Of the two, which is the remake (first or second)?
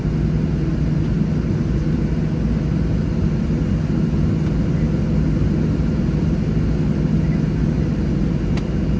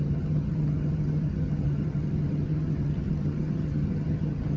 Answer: second